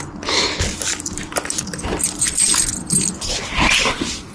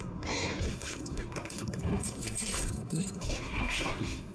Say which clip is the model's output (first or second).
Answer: second